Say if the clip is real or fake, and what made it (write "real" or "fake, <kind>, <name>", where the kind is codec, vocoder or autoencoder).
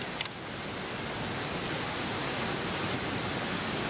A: real